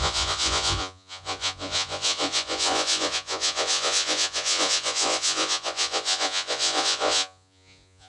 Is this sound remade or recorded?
remade